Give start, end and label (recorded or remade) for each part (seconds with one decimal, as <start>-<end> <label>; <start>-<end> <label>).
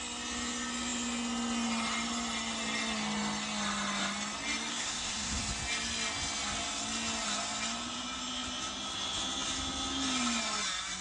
0.0-4.7 recorded; 4.7-5.4 remade; 5.4-11.0 recorded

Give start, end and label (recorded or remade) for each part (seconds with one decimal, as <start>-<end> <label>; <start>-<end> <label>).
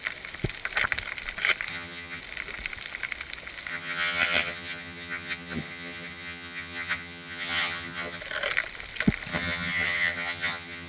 0.0-1.7 recorded; 1.7-2.2 remade; 2.2-3.7 recorded; 3.7-8.2 remade; 8.2-9.3 recorded; 9.3-10.9 remade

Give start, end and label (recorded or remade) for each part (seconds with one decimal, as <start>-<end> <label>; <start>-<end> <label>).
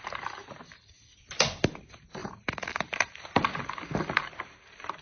0.0-0.4 recorded; 0.4-1.0 remade; 1.0-2.2 recorded; 2.2-4.0 remade; 4.0-5.0 recorded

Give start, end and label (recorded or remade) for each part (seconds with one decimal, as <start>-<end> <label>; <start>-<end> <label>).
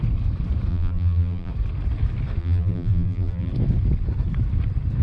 0.0-0.7 recorded; 0.7-1.5 remade; 1.5-2.4 recorded; 2.4-3.5 remade; 3.5-5.0 recorded